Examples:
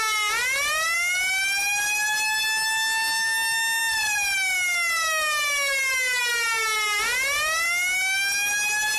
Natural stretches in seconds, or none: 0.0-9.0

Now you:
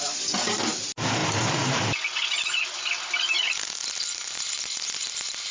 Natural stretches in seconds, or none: 0.0-5.5

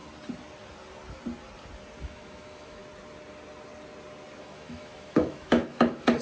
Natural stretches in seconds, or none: 0.0-2.0; 2.8-4.4

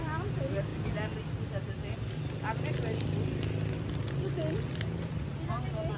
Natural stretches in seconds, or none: 0.0-6.0

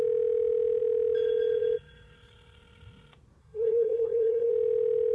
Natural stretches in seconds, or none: 0.0-3.4; 4.5-5.1

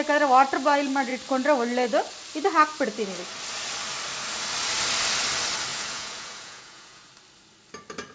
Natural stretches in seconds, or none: 0.0-5.7; 7.1-8.1

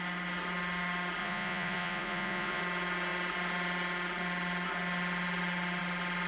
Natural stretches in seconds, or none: 0.0-1.2; 2.6-6.3